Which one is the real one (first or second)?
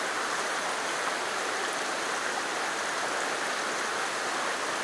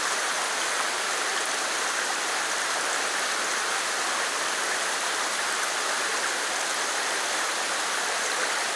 first